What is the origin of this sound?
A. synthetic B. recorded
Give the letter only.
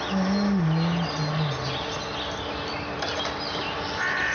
B